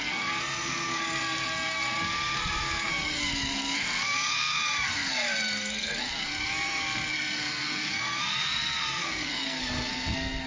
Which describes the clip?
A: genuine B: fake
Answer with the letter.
B